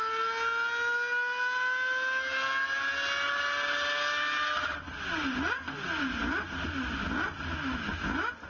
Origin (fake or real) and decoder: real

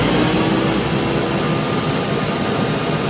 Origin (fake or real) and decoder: real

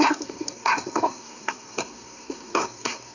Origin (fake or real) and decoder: fake, codec, SNAC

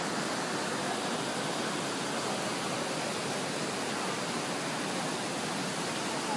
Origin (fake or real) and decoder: real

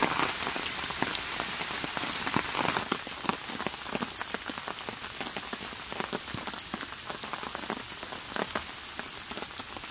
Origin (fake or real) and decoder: real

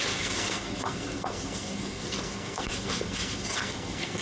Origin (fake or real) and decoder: fake, codec, SNAC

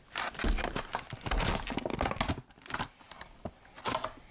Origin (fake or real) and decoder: real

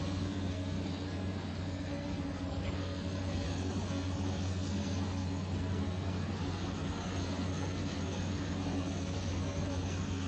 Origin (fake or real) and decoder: fake, codec, SNAC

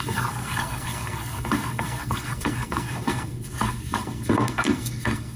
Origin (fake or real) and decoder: fake, codec, SNAC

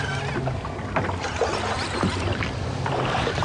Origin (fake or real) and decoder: real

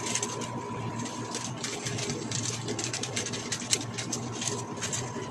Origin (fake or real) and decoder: real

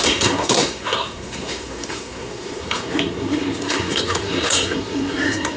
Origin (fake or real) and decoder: fake, codec, SNAC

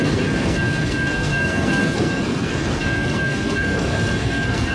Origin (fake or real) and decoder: fake, codec, SNAC